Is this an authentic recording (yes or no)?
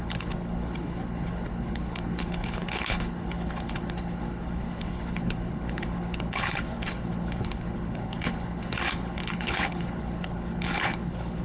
no